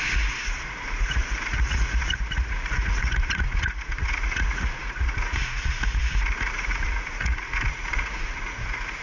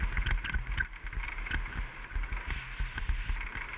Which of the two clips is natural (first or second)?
second